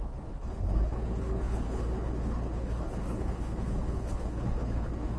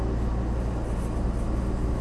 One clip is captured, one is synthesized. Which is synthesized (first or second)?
first